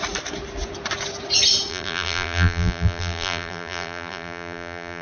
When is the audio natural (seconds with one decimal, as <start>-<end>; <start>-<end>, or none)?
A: 0.0-1.7